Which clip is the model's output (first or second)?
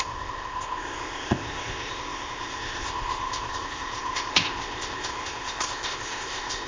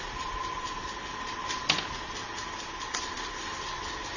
first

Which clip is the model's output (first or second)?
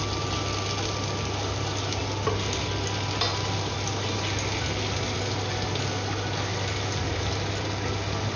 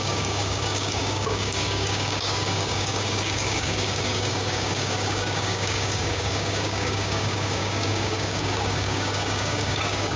second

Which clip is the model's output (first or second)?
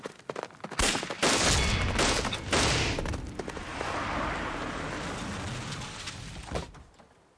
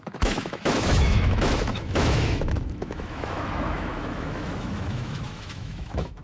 second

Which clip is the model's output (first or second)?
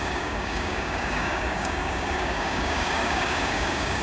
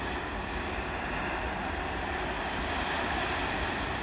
first